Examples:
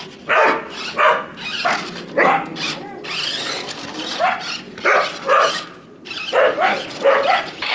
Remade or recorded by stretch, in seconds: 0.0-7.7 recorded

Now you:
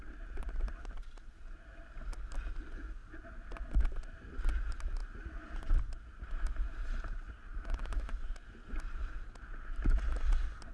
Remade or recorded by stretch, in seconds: 0.0-7.5 recorded; 7.5-8.1 remade; 8.1-10.7 recorded

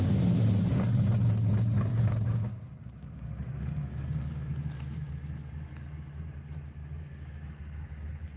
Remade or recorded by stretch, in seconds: 0.0-1.9 recorded; 1.9-4.5 remade; 4.5-6.8 recorded; 6.8-7.5 remade; 7.5-8.4 recorded